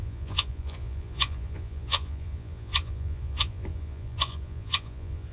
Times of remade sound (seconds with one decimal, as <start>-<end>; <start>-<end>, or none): 0.0-5.3